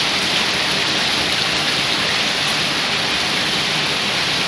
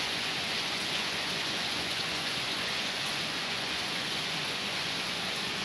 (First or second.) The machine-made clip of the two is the second